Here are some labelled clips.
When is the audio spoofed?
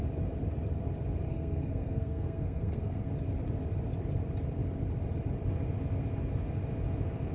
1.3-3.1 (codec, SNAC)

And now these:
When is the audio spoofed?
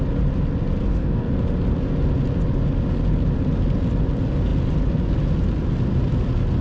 0.8-1.3 (codec, SNAC)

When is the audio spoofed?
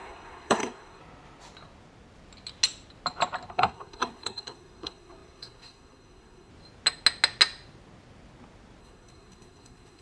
0.0-1.0 (codec, SNAC); 3.5-6.5; 8.8-10.0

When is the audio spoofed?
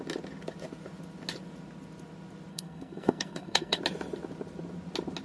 2.5-3.8 (codec, SNAC)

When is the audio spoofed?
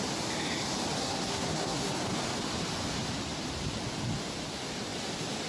1.0-1.9 (codec, SNAC)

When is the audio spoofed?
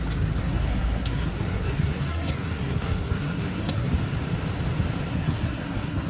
0.4-3.9 (codec, SNAC); 5.1-6.1